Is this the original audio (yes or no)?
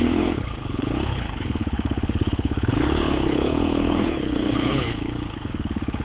no